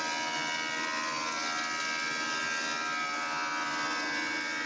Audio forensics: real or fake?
real